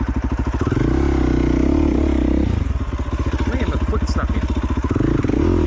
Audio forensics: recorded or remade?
recorded